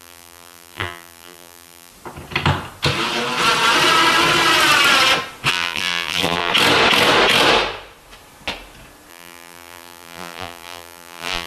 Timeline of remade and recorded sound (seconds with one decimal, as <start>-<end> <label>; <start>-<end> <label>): 0.0-1.9 remade; 1.9-5.5 recorded; 5.5-6.5 remade; 6.5-9.1 recorded; 9.1-11.5 remade

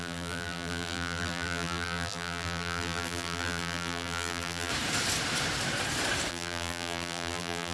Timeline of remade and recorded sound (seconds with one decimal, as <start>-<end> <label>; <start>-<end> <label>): 0.0-4.7 remade; 4.7-6.3 recorded; 6.3-7.7 remade

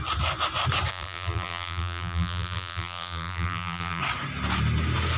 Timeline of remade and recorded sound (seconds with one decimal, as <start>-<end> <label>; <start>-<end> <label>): 0.0-0.9 recorded; 0.9-4.0 remade; 4.0-5.2 recorded

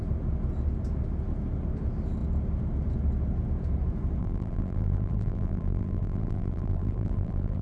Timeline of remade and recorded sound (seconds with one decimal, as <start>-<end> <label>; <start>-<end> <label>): 0.0-4.2 recorded; 4.2-7.6 remade

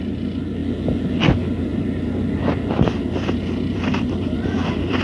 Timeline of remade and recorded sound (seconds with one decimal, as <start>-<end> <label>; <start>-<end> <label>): 0.0-1.7 recorded; 1.7-5.0 remade

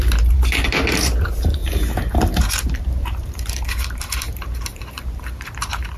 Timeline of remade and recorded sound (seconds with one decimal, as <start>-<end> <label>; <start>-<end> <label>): 0.0-6.0 remade

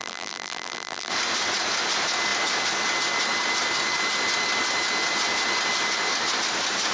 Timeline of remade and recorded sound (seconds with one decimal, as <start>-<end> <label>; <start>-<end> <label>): 0.0-1.1 remade; 1.1-6.9 recorded